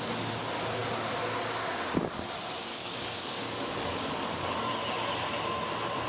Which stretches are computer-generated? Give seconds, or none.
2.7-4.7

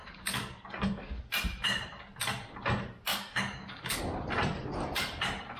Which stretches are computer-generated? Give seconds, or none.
0.0-1.2; 3.1-4.0

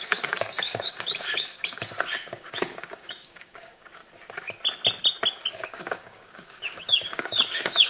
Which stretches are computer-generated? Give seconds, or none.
0.0-4.0; 5.5-7.9

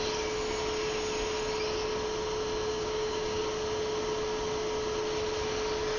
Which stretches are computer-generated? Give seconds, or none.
2.7-3.4

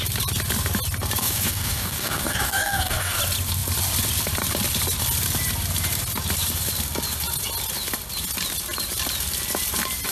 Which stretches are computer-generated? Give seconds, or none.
1.2-3.2

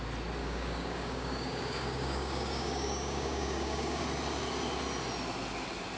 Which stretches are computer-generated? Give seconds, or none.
0.4-4.0

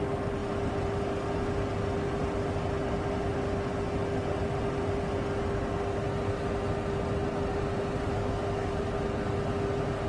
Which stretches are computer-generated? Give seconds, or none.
8.1-8.8

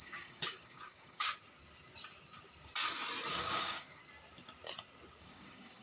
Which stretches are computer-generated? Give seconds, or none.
0.0-1.2; 3.3-4.0; 5.2-5.8